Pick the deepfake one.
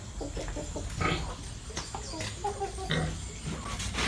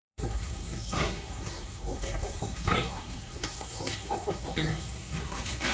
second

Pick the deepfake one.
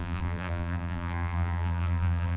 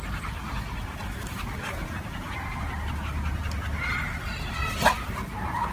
first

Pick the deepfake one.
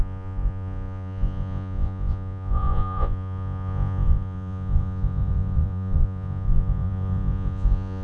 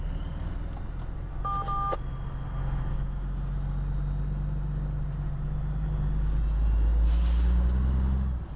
first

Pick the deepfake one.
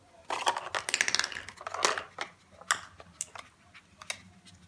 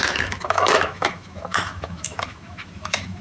second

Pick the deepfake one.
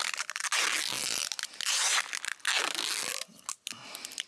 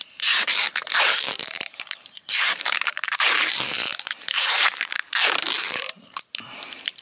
second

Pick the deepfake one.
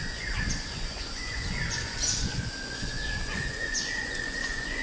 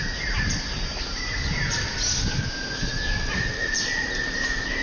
first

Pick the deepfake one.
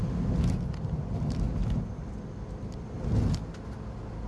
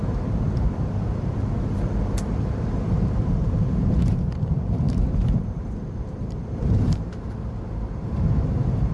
second